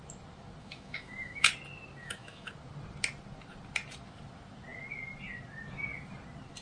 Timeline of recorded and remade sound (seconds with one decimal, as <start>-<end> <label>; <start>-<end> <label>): 0.0-0.6 recorded; 0.6-1.5 remade; 1.5-2.0 recorded; 2.0-2.5 remade; 2.5-6.6 recorded